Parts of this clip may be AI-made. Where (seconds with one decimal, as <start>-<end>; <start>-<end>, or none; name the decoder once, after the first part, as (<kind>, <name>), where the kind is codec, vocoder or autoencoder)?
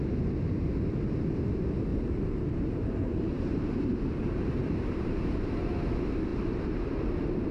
1.9-5.7 (vocoder, BigVGAN v2); 6.3-6.9